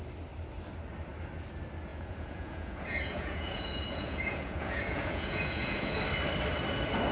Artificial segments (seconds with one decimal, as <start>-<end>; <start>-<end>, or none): 1.9-6.0